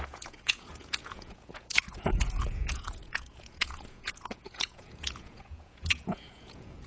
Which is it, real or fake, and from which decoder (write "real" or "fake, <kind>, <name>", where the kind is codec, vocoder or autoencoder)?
fake, vocoder, Vocos